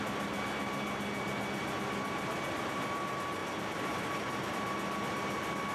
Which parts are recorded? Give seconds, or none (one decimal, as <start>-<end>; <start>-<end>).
0.0-5.7